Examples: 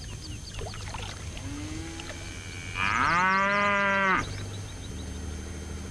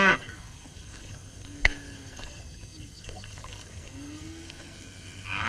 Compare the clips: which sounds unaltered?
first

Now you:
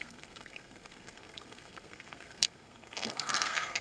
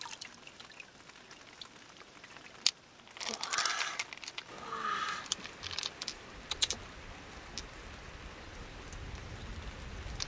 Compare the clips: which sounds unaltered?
second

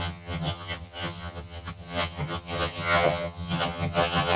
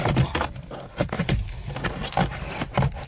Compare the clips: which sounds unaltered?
second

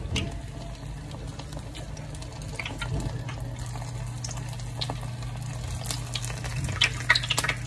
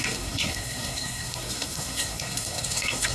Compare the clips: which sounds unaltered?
first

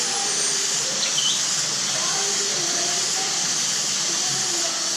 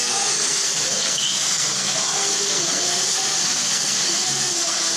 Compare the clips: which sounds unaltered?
first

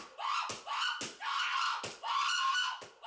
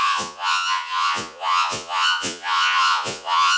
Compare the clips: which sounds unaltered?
first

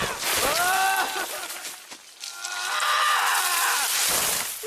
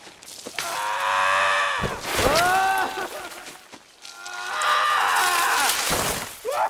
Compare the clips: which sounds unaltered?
second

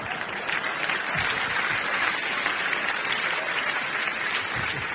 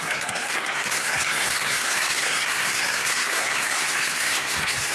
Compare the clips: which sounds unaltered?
first